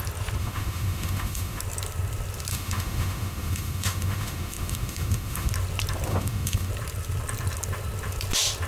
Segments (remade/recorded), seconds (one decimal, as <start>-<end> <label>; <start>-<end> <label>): 0.0-0.4 recorded; 0.4-1.6 remade; 1.6-2.5 recorded; 2.5-5.5 remade; 5.5-6.1 recorded; 6.1-6.7 remade; 6.7-8.7 recorded